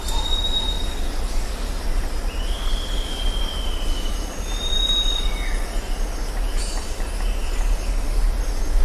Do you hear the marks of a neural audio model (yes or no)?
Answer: no